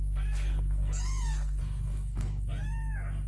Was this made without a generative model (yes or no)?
no